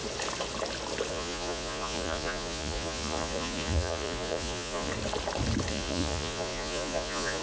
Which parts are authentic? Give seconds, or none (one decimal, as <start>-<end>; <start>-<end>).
0.0-1.1; 4.9-5.7

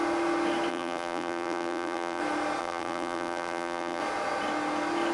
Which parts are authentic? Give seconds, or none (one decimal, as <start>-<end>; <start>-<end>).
0.0-0.7; 2.2-2.6; 4.0-5.1

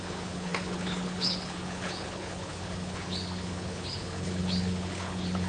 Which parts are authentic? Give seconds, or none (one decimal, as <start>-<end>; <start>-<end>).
none

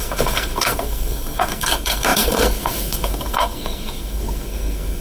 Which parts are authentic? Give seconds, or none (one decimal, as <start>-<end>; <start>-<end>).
none

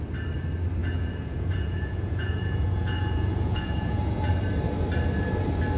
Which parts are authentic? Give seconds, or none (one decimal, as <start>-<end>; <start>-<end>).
0.0-0.8; 4.3-5.8

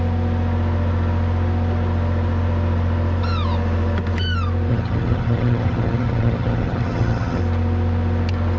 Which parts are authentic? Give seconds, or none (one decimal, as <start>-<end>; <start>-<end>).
0.0-4.7; 7.4-8.6

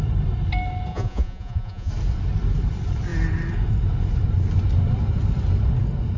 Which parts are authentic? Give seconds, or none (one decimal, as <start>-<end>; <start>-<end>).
0.0-0.9; 1.9-6.2

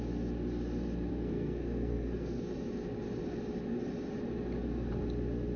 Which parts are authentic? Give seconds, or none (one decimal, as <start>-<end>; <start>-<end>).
0.0-1.1; 2.4-5.6